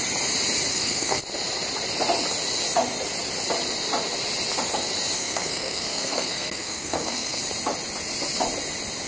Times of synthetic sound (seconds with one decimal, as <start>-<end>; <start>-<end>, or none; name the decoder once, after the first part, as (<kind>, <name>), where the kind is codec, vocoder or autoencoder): 0.7-1.2 (codec, SNAC); 5.2-7.4